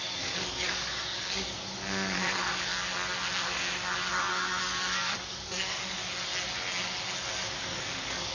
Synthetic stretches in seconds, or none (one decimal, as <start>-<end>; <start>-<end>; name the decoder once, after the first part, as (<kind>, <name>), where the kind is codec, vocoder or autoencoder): 0.0-2.7 (codec, DAC); 4.1-6.0; 7.3-8.3